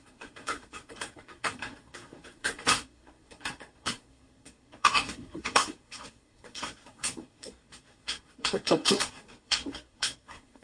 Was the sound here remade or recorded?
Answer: remade